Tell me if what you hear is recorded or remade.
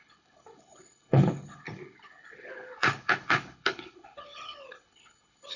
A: remade